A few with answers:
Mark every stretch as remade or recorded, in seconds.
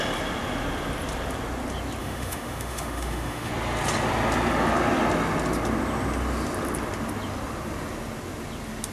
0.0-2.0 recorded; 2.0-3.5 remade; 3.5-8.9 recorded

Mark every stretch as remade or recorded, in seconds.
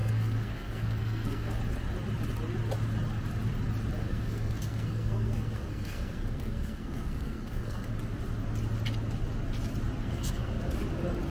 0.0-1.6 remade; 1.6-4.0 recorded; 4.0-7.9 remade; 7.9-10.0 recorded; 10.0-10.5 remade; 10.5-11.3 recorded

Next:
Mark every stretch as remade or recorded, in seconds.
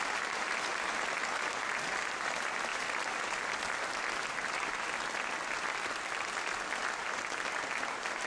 0.0-8.3 recorded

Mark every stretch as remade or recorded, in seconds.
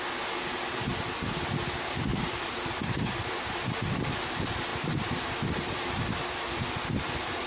0.0-2.1 recorded; 2.1-3.9 remade; 3.9-4.7 recorded; 4.7-6.6 remade; 6.6-7.5 recorded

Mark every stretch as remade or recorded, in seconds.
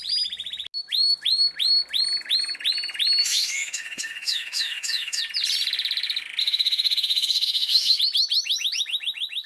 0.0-3.2 recorded; 3.2-5.2 remade; 5.2-6.4 recorded; 6.4-8.0 remade; 8.0-9.5 recorded